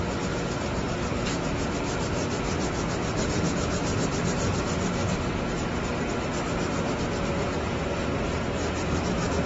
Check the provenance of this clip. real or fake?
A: fake